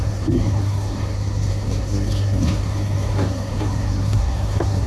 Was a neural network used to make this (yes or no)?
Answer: yes